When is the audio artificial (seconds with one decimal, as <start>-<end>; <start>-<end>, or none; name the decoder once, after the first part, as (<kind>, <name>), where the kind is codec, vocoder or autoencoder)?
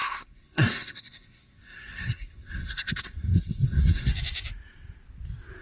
0.0-4.1 (codec, SNAC)